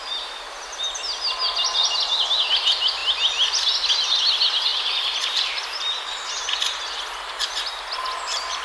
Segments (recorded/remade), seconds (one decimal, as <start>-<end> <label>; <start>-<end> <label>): 0.0-4.7 recorded; 4.7-6.4 remade; 6.4-8.6 recorded